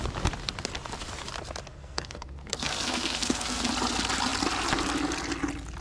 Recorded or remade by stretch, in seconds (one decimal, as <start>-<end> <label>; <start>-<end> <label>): 0.0-1.7 recorded; 1.7-3.7 remade; 3.7-5.8 recorded